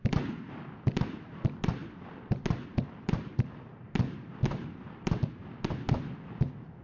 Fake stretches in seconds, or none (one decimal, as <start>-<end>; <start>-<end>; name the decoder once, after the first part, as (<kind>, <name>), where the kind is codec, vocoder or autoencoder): none